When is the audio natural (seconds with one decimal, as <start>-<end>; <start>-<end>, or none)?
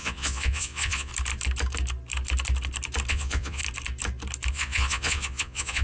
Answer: 1.1-3.1; 3.6-4.5